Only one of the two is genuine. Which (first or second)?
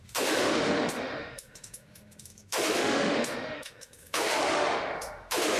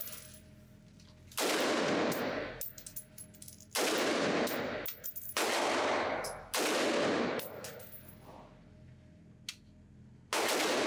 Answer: second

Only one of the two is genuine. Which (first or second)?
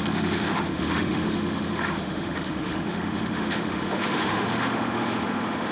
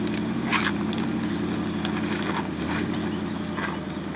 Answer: second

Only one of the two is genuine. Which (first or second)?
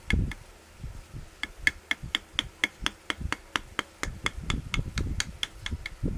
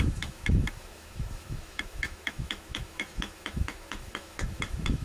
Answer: first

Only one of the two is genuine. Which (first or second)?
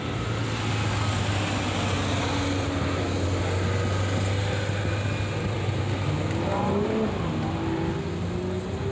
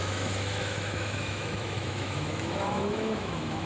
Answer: first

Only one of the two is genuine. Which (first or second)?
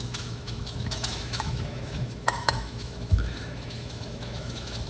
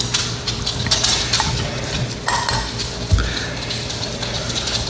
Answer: second